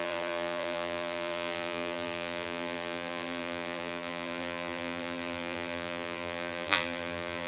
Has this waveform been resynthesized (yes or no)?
yes